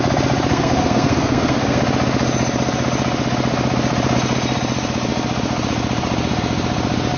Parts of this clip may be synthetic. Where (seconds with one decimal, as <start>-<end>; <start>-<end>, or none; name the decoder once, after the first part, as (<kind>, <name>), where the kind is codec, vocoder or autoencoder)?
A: 0.5-1.8 (codec, SNAC)

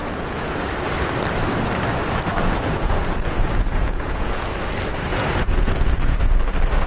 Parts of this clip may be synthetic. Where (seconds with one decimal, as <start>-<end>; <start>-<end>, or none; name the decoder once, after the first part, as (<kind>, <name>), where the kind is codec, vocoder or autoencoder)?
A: 0.0-0.6 (vocoder, Vocos); 2.3-4.5; 5.1-6.4

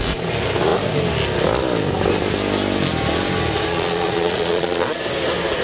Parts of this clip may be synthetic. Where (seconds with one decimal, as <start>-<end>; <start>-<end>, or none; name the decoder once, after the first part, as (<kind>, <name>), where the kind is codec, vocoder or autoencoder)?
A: 3.7-5.0 (vocoder, Vocos)

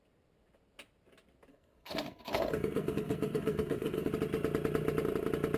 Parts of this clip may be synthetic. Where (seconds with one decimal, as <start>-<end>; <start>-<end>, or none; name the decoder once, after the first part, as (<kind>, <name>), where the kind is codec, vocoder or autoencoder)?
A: 1.5-4.1 (codec, SNAC)

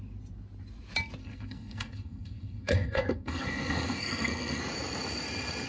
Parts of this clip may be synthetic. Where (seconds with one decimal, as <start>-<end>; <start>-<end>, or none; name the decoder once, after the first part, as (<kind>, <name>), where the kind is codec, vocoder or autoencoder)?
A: 1.2-4.6 (codec, SNAC)

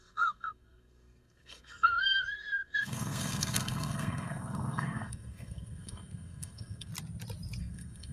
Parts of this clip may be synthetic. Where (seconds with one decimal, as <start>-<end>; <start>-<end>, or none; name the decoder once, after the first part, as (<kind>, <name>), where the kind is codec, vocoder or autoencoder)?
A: 0.0-6.9 (codec, SNAC); 7.6-8.1

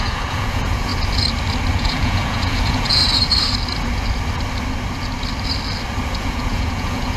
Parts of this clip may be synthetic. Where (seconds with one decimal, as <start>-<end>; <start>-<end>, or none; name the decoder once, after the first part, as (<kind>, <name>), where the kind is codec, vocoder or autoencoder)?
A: 0.0-0.9 (vocoder, Vocos); 1.7-3.0; 6.2-7.2